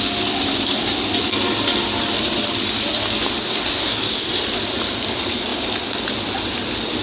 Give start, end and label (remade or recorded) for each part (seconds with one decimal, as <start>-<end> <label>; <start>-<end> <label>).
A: 0.0-3.4 recorded; 3.4-4.4 remade; 4.4-7.0 recorded